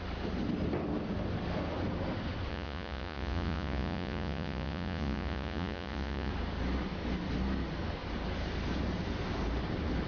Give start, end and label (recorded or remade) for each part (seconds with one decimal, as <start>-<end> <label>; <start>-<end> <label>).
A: 0.0-2.5 recorded; 2.5-6.3 remade; 6.3-10.1 recorded